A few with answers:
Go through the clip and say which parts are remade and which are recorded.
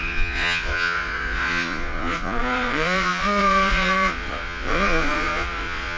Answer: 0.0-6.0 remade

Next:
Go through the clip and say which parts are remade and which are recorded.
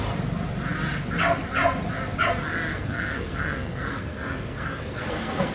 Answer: 0.0-2.7 recorded; 2.7-5.5 remade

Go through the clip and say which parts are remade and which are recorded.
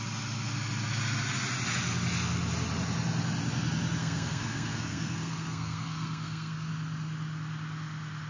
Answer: 0.0-4.0 recorded; 4.0-6.7 remade; 6.7-8.3 recorded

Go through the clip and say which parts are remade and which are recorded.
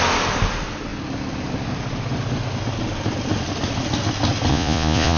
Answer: 0.0-4.5 recorded; 4.5-5.2 remade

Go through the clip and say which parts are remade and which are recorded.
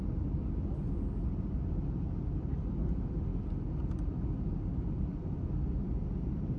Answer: 0.0-0.4 remade; 0.4-2.5 recorded; 2.5-3.3 remade; 3.3-4.8 recorded; 4.8-6.6 remade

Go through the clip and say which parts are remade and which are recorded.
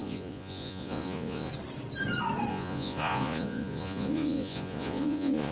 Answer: 0.0-1.5 remade; 1.5-2.5 recorded; 2.5-5.5 remade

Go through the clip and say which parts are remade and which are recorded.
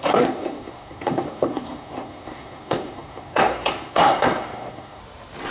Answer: 0.0-5.0 remade; 5.0-5.5 recorded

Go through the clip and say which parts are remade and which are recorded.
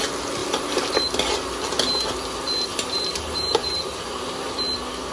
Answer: 0.0-0.4 recorded; 0.4-1.0 remade; 1.0-2.7 recorded; 2.7-4.5 remade; 4.5-5.1 recorded